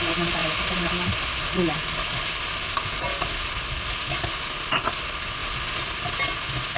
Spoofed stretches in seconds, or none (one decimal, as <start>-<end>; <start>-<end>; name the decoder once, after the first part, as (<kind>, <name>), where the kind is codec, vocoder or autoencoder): none